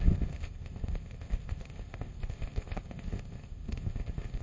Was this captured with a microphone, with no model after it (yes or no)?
no